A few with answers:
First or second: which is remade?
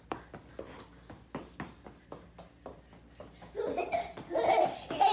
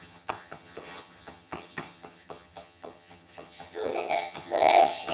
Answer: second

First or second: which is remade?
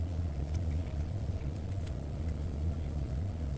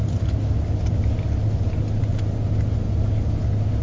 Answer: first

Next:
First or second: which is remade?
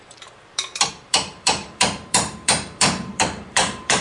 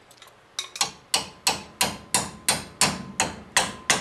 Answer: first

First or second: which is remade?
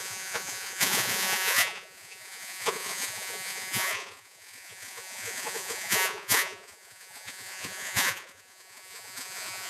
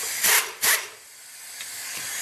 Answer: first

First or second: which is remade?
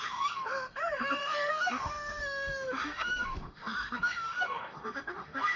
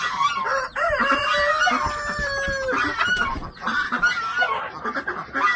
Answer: first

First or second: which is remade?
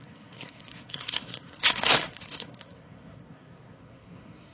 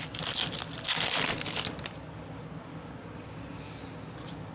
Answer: first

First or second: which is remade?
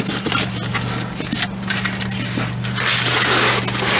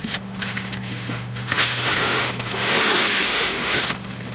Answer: second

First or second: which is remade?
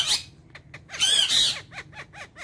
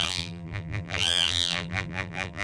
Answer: second